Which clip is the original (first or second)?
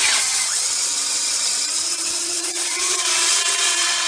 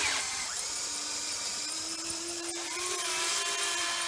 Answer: second